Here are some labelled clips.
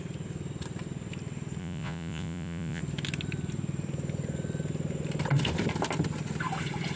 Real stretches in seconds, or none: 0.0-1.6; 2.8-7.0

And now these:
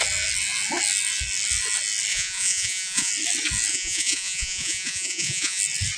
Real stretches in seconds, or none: 0.0-2.1; 3.1-3.7; 5.6-6.0

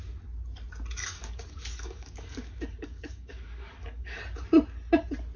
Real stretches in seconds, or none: 0.0-1.0; 4.2-5.4